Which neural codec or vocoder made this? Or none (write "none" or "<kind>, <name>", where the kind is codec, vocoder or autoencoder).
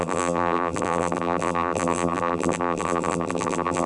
vocoder, BigVGAN v2